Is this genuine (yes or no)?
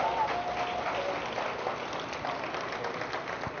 yes